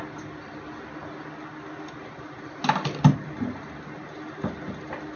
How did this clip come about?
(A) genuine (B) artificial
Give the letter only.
A